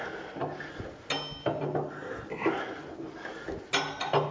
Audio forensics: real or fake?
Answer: real